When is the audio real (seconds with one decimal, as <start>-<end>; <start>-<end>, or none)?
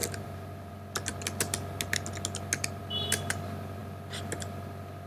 0.7-5.1